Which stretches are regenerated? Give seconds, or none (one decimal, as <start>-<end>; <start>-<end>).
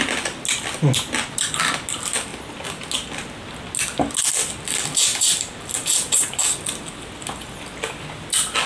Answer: none